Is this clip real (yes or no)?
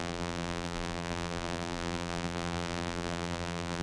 no